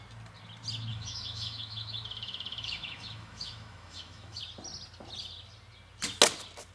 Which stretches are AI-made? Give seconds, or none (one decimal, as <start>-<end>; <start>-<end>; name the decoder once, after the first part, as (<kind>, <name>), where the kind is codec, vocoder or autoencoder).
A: 0.9-4.4 (autoencoder, DAC-VAE)